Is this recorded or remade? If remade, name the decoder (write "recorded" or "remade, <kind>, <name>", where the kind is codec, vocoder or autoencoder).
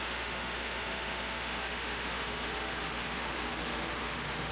remade, autoencoder, DAC-VAE